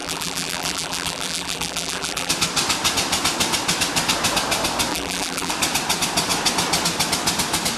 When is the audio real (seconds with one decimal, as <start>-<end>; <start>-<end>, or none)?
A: 2.3-4.9; 5.5-7.8